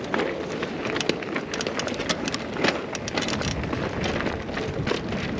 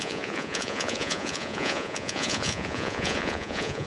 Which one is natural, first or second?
first